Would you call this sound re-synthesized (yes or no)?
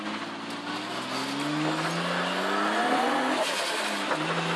no